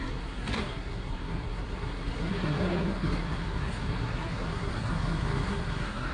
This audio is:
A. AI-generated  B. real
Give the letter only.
A